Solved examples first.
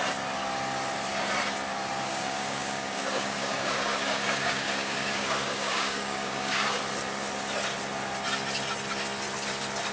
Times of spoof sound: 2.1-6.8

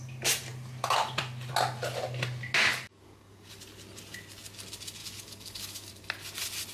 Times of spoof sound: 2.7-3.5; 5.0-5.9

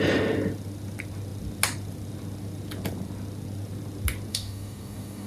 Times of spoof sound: 4.3-5.3

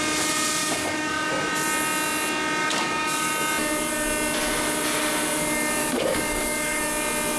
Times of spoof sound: 0.6-1.3; 2.6-3.3; 5.8-6.8

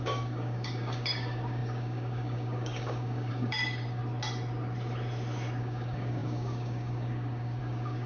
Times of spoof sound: 0.0-4.0; 5.6-8.1